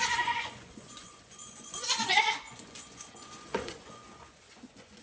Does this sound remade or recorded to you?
remade